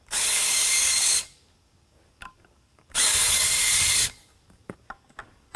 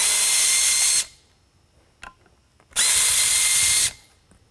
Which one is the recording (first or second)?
second